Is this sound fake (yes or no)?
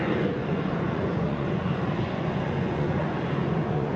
yes